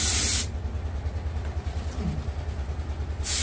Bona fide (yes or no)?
yes